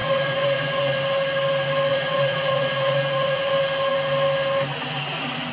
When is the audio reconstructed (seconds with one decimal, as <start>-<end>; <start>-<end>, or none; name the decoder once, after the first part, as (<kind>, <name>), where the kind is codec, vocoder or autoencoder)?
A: 0.0-1.0 (vocoder, Vocos); 1.9-3.5